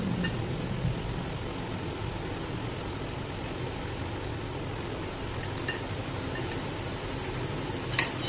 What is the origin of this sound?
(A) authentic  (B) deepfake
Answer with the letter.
A